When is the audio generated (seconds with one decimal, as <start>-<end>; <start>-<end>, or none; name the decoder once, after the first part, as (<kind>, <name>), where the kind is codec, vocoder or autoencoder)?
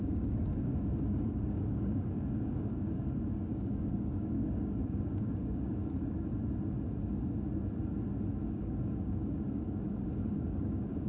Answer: 0.0-6.3 (codec, DAC); 8.5-11.1